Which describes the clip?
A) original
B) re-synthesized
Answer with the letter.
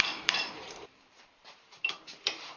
B